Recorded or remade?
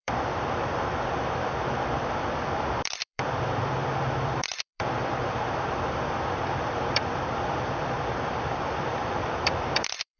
remade